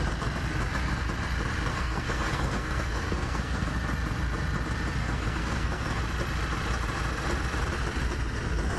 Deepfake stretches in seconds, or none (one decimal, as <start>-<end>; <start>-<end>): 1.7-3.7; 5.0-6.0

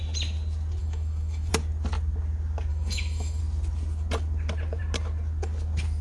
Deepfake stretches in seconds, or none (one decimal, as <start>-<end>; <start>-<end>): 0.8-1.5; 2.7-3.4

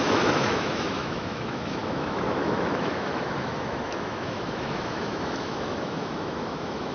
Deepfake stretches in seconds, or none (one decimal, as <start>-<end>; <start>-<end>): 0.0-6.9

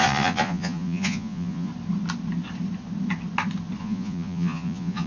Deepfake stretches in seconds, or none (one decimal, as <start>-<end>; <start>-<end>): 0.0-1.7; 3.8-5.1

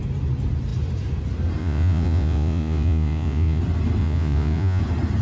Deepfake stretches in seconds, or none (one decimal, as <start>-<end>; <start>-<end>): 1.6-3.6; 4.0-4.8